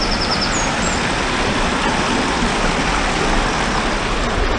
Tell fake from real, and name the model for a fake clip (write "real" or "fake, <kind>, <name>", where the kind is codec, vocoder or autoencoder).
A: real